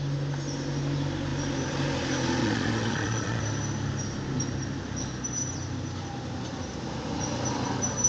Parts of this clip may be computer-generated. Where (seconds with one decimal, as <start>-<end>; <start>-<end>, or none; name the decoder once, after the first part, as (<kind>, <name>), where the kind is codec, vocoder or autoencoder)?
2.4-3.4 (vocoder, Vocos)